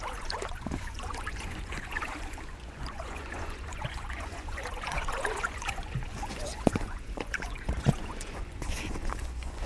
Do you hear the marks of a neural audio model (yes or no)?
yes